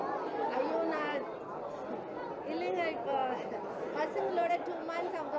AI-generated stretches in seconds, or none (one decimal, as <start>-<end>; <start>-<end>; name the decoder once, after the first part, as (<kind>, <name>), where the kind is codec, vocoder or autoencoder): 0.6-1.4 (vocoder, BigVGAN v2); 3.2-4.5